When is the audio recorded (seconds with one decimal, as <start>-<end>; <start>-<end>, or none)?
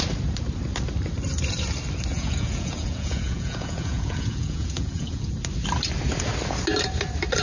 0.0-2.1; 5.3-7.4